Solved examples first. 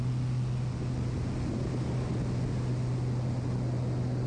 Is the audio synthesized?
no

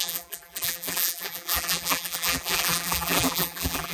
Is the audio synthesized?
yes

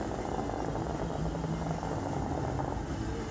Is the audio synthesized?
no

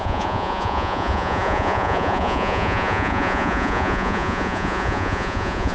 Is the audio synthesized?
yes